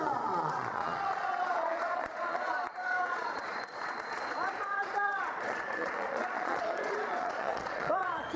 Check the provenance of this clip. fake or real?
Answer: fake